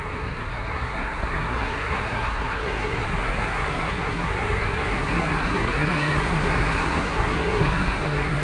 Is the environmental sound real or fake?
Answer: fake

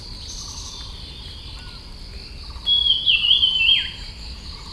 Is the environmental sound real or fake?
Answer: real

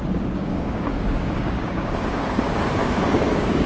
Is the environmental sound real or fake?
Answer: fake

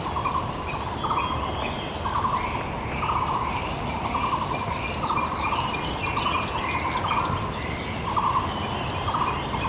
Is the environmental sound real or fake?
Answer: real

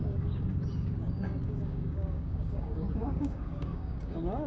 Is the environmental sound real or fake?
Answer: fake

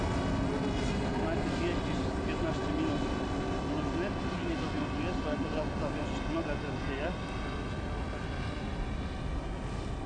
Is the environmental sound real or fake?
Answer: real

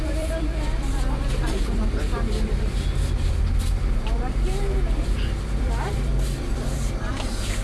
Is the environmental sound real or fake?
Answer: fake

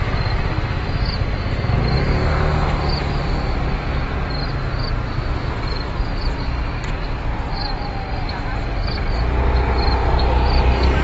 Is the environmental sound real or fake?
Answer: real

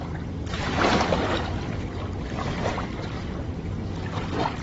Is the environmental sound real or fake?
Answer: real